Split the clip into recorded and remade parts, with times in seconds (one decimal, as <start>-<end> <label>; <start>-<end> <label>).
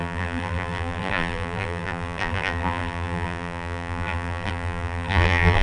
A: 0.0-5.6 remade